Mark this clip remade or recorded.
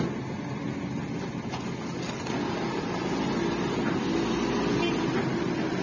recorded